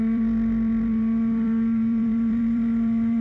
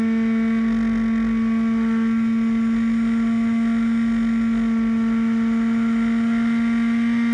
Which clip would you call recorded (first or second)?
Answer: second